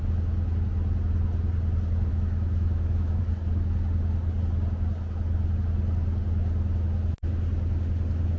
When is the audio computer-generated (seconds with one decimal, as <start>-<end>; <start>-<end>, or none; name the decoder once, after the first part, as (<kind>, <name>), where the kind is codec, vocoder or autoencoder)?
2.1-3.2 (autoencoder, DAC-VAE)